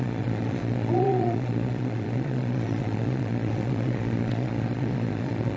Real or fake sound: fake